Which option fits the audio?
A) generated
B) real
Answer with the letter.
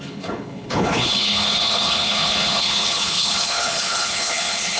A